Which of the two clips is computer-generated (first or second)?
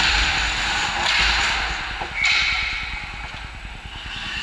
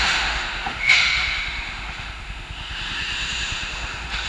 second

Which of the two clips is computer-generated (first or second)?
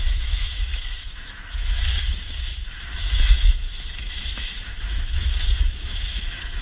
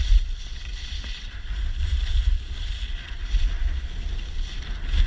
first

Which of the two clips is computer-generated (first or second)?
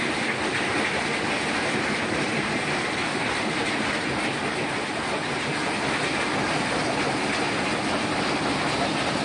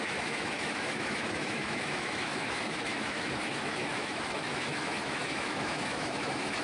second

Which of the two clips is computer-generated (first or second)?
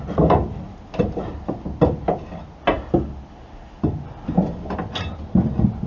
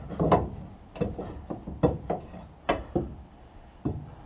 second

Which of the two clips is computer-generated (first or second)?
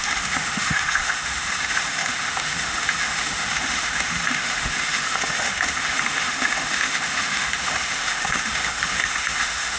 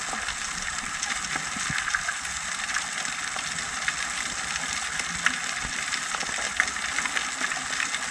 first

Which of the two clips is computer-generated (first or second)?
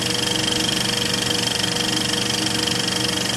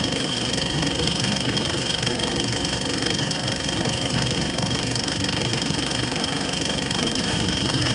second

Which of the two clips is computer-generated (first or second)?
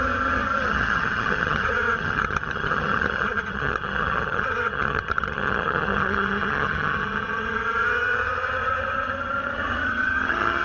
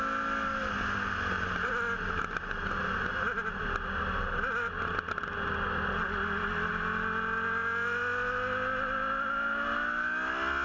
first